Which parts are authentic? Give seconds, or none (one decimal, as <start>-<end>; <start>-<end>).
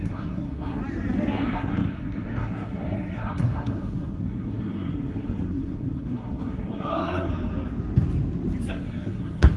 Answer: 0.8-1.3; 7.3-8.7